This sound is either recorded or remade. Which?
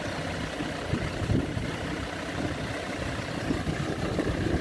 recorded